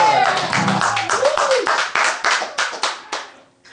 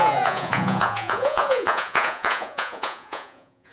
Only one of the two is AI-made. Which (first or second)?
second